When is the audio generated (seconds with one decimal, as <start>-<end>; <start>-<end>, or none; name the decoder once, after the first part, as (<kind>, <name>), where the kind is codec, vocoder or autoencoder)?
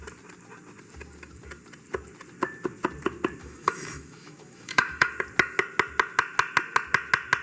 3.4-5.1 (autoencoder, DAC-VAE)